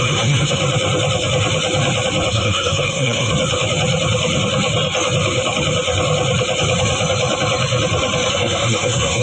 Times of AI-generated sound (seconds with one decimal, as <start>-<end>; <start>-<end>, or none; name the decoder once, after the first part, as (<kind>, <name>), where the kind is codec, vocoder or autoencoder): 0.0-0.6 (codec, SNAC); 2.3-3.3; 8.3-9.2